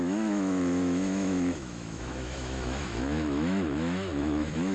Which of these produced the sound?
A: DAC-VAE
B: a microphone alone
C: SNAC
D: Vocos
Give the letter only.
A